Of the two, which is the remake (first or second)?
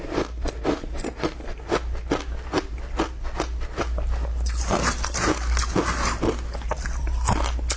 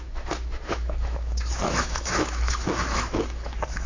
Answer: second